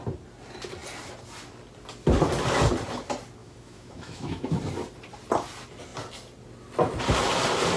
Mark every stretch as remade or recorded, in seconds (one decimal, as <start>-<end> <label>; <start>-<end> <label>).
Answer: 0.0-3.4 recorded; 3.4-4.6 remade; 4.6-7.8 recorded